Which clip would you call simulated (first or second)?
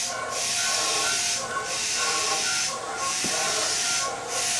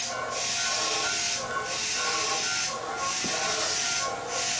first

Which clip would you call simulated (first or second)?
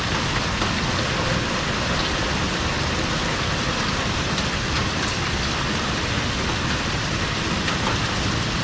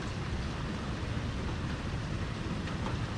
second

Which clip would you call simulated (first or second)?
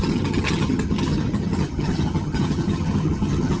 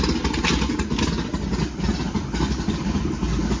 first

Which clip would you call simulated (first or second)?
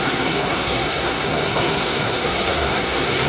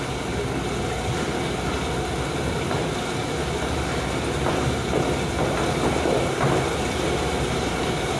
first